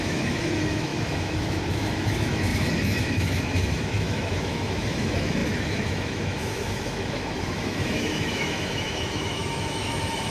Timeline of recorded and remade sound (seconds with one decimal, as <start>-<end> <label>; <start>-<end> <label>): 0.0-10.3 remade